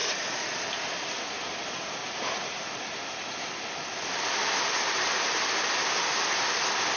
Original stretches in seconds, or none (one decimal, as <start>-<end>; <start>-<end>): 0.6-2.0; 2.7-7.0